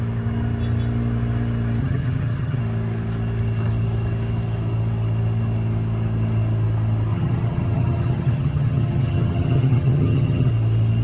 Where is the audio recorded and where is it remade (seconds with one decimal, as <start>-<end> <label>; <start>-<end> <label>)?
0.0-1.8 recorded; 1.8-2.6 remade; 2.6-7.1 recorded; 7.1-10.5 remade; 10.5-11.0 recorded